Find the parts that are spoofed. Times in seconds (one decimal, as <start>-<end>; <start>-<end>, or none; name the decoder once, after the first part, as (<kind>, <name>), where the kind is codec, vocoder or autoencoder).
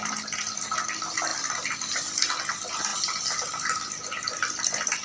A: none